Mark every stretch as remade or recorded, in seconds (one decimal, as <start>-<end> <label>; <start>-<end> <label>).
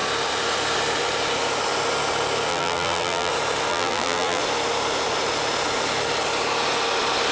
0.0-2.5 recorded; 2.5-3.3 remade; 3.3-3.7 recorded; 3.7-4.4 remade; 4.4-7.3 recorded